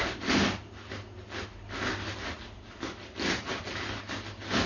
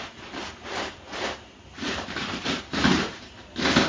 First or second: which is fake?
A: second